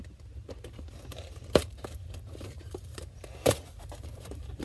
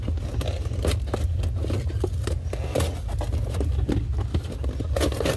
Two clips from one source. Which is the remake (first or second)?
first